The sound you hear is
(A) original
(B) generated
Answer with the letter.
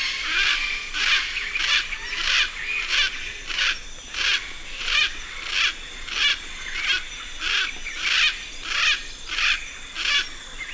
A